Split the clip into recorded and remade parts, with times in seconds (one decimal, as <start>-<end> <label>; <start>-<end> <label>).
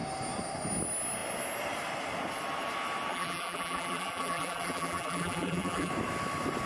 0.0-3.1 recorded; 3.1-5.9 remade; 5.9-6.7 recorded